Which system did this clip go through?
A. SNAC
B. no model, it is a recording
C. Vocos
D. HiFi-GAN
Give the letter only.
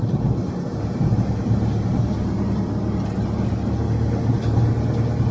B